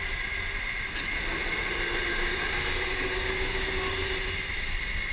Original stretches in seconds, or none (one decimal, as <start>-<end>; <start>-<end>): 0.0-2.1; 4.1-5.1